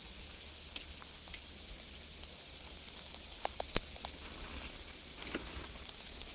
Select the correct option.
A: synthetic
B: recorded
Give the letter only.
B